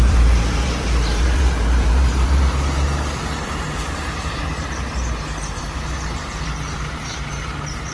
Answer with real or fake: fake